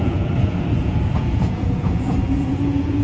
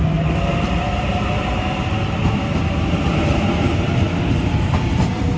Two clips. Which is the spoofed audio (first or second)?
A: first